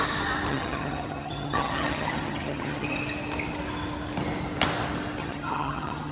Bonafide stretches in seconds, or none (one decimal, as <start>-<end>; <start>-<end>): 0.0-0.5; 3.0-5.2